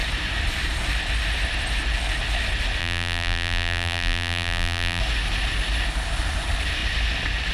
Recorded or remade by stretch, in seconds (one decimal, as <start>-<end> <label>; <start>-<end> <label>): 0.0-2.8 recorded; 2.8-5.0 remade; 5.0-7.5 recorded